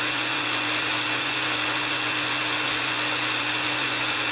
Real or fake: fake